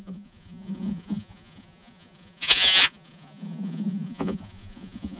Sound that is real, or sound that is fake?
fake